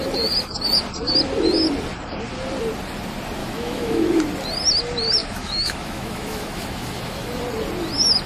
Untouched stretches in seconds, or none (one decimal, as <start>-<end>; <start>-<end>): 0.0-3.4; 4.2-5.2; 7.4-8.3